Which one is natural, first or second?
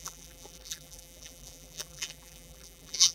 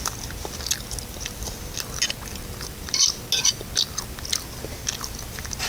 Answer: second